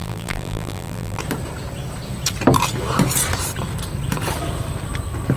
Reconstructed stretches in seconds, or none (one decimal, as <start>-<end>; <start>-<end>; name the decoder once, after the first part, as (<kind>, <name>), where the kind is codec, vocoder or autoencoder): 0.0-1.2 (vocoder, BigVGAN v2)